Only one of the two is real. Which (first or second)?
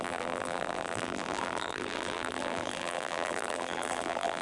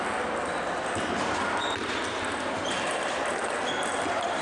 second